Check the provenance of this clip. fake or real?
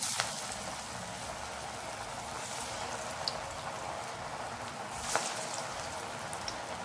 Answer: real